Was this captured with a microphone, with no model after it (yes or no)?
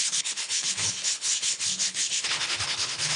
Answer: no